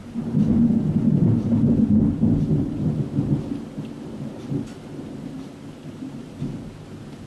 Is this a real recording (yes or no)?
yes